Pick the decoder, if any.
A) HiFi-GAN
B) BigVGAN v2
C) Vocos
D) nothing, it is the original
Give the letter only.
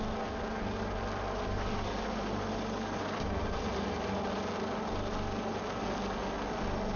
D